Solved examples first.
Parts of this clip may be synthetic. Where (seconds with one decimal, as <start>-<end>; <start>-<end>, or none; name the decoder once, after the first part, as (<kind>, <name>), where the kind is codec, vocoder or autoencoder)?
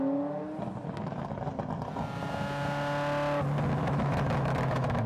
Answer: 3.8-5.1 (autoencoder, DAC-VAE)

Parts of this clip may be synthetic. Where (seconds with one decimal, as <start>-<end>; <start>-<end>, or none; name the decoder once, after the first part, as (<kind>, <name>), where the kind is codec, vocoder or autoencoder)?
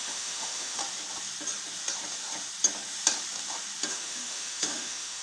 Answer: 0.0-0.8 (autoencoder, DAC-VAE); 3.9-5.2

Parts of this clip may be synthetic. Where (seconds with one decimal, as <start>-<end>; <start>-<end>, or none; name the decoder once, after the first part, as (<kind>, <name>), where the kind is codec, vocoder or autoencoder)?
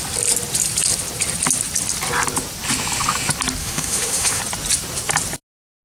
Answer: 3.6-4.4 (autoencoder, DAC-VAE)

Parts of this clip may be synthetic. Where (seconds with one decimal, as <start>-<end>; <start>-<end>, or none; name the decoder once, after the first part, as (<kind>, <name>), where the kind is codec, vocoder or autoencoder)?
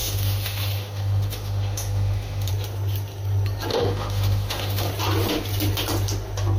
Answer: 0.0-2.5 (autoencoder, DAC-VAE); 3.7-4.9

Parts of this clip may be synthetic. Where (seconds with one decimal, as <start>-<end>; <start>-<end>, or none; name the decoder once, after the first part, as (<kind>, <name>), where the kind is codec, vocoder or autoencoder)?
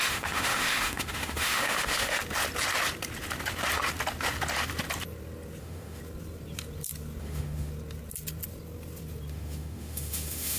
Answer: 0.0-2.2 (autoencoder, DAC-VAE); 5.6-6.0; 7.2-7.7; 9.3-10.6